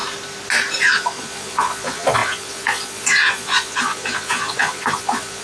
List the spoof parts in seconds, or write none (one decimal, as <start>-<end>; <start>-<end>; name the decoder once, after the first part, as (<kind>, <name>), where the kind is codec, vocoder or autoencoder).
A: 0.8-5.4 (vocoder, Vocos)